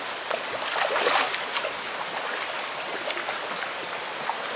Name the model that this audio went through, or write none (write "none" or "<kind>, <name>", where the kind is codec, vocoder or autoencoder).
none